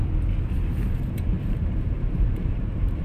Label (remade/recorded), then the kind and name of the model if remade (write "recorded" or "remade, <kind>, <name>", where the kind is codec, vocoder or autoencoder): remade, vocoder, BigVGAN v2